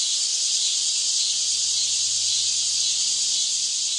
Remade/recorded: recorded